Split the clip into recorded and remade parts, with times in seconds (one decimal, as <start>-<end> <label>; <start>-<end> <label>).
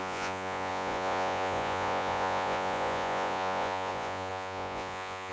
0.0-5.3 remade